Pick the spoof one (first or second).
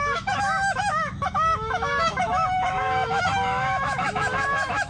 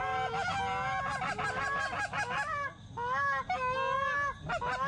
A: first